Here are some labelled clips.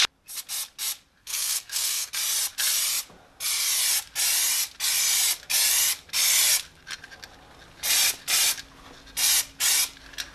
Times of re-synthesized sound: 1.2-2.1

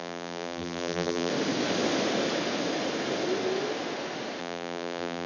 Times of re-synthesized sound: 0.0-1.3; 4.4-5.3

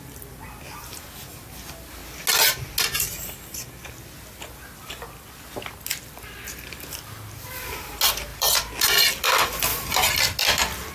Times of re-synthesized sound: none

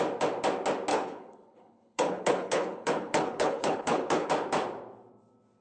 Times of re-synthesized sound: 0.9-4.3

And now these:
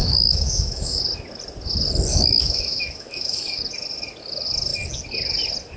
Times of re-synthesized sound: 0.0-1.0; 2.1-3.6

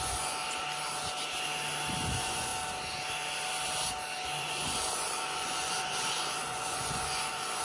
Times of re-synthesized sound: 0.0-0.4; 2.1-2.5; 4.4-7.6